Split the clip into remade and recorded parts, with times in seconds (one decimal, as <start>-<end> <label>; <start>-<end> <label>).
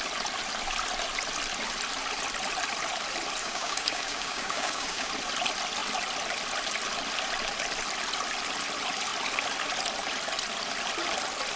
0.0-3.4 recorded; 3.4-5.1 remade; 5.1-11.6 recorded